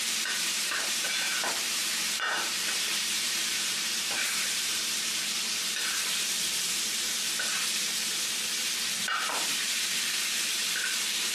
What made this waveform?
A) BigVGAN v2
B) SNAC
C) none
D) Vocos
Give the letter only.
A